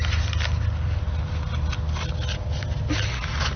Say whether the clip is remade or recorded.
recorded